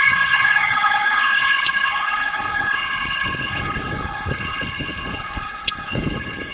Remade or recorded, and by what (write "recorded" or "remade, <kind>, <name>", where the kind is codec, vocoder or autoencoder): remade, codec, HILCodec